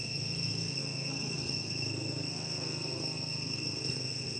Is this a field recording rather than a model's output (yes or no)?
no